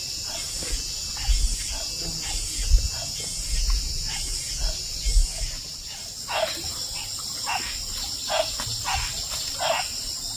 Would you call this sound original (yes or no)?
yes